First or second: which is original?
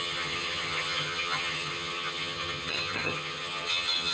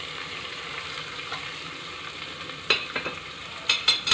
second